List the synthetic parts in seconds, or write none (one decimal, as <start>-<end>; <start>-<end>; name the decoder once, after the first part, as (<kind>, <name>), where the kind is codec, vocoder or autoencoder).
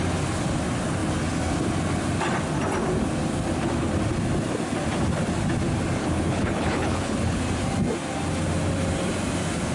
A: 6.0-7.4 (codec, HILCodec)